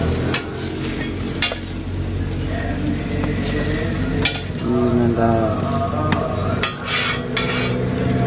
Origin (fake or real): real